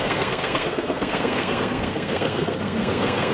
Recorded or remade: remade